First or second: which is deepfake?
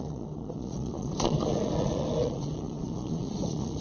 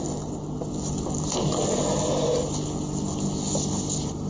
first